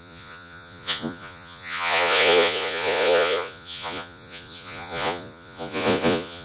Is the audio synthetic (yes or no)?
yes